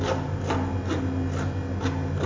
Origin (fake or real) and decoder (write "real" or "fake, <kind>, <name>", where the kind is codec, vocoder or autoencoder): real